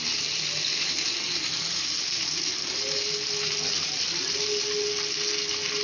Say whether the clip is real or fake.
real